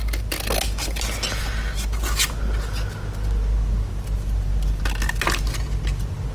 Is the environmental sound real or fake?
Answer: real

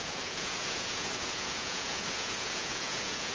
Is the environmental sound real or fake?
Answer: fake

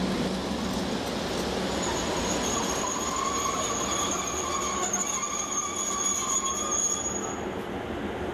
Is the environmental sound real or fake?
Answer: real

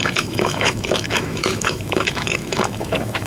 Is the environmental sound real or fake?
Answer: fake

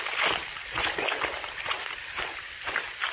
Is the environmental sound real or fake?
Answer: real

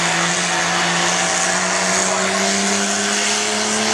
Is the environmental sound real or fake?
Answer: real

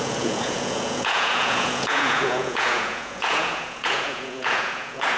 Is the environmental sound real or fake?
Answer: fake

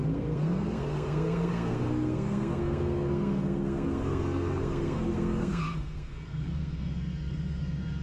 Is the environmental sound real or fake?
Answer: fake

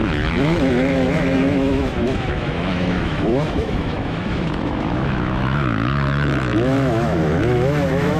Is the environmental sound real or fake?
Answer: fake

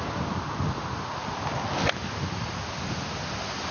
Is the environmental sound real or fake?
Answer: real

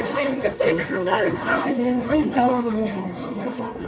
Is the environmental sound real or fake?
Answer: fake